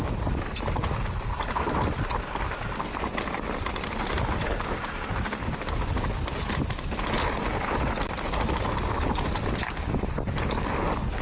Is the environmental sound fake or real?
real